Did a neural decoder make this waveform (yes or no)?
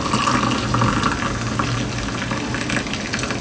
no